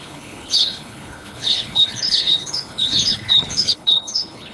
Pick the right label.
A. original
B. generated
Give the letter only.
B